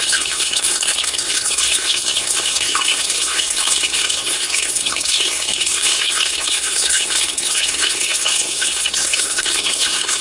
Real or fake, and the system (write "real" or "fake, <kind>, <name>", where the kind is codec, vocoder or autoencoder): fake, codec, SNAC